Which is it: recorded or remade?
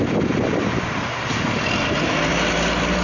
recorded